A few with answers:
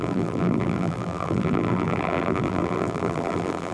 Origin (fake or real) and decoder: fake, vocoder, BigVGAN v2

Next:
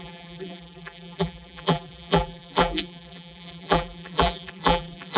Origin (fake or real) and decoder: fake, vocoder, BigVGAN v2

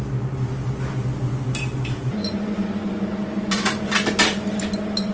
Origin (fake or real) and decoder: real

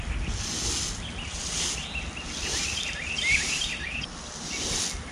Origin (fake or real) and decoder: real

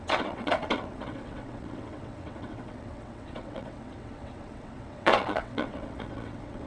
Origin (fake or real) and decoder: fake, vocoder, WaveNeXt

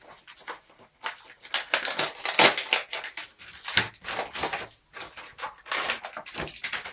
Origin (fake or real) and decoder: real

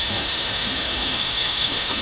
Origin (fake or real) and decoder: fake, autoencoder, DAC-VAE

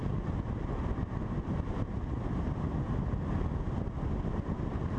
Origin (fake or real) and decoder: real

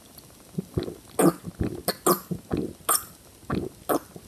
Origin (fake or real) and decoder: real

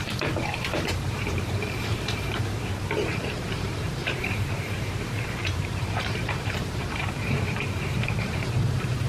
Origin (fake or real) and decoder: fake, vocoder, BigVGAN v2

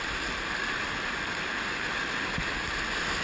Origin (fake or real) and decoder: real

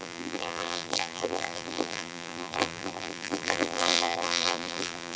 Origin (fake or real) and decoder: fake, vocoder, BigVGAN v2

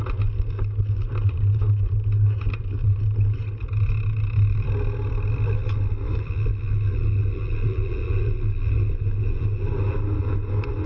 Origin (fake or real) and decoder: real